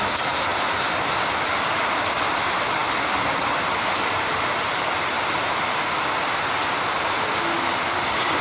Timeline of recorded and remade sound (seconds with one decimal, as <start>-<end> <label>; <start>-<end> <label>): 0.0-8.4 recorded